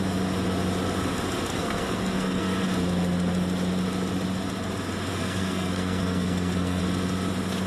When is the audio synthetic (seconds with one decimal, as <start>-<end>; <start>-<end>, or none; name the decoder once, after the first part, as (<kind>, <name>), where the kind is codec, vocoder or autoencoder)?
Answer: 1.5-2.7 (codec, SNAC); 5.1-6.8